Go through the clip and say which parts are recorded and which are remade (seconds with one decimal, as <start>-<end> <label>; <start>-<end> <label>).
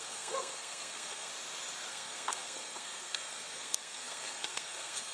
0.0-1.3 remade; 1.3-1.9 recorded; 1.9-5.1 remade